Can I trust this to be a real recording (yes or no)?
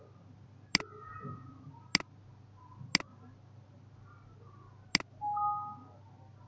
yes